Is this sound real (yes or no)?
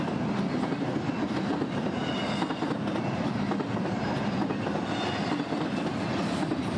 yes